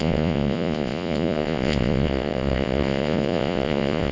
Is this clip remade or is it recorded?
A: remade